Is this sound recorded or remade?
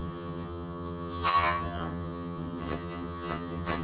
remade